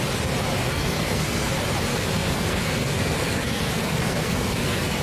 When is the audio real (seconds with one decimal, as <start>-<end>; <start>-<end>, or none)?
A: 0.0-0.6; 1.5-1.9